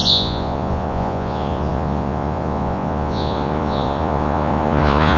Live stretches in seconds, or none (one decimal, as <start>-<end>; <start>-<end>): none